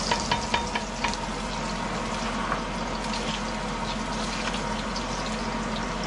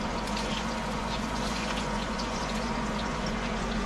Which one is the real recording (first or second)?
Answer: first